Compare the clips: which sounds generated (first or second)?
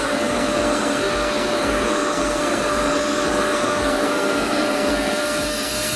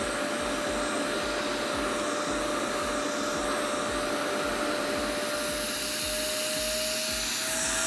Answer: first